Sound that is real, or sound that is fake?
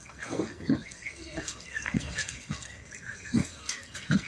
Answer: fake